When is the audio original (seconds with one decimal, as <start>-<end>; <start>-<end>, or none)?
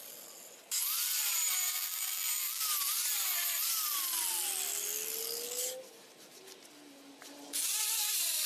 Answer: 0.0-1.7; 2.6-8.5